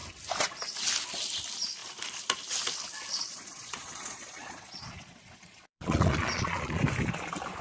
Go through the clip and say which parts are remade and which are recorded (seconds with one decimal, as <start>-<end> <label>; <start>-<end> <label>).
0.0-3.3 recorded; 3.3-6.8 remade; 6.8-7.6 recorded